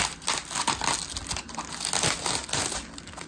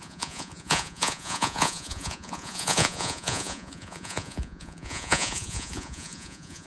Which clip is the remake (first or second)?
second